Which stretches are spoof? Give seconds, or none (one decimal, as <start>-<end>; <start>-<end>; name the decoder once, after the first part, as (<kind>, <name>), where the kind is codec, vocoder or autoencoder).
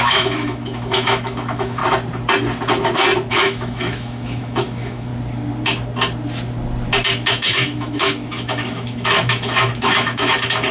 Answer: 0.0-1.8 (autoencoder, DAC-VAE); 3.3-5.1; 7.3-10.7